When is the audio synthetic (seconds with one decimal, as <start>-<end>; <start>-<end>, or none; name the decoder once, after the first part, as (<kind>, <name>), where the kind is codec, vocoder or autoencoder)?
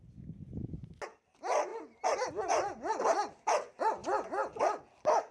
none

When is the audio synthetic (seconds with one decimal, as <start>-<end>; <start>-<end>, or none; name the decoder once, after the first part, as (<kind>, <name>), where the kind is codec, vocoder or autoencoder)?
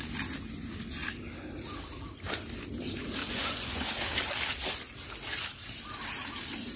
3.2-3.9 (vocoder, Vocos)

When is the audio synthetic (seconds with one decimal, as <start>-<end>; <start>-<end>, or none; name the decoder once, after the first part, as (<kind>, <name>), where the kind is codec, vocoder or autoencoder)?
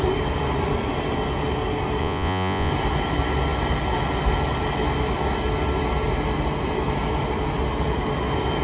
2.0-2.7 (vocoder, Vocos)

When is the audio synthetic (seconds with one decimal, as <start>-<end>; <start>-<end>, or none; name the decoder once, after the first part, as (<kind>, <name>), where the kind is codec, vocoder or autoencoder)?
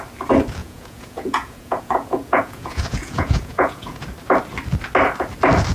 0.6-4.0 (vocoder, Vocos)